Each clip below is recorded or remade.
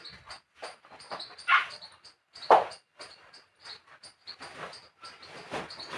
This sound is recorded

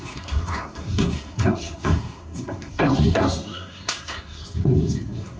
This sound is remade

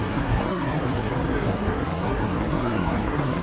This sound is remade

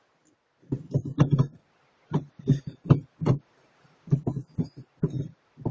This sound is recorded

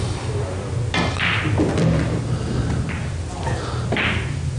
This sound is recorded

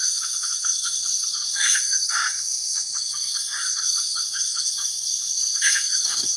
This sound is remade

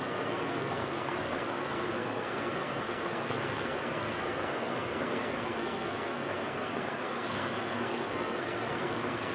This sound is remade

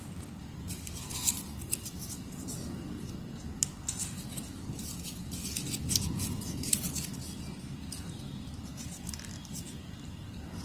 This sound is recorded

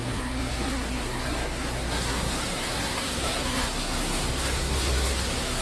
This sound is remade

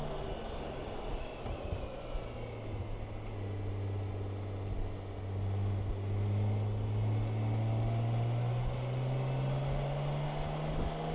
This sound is recorded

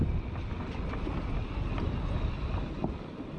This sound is recorded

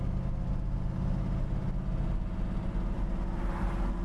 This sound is recorded